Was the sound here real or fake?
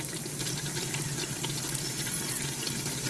real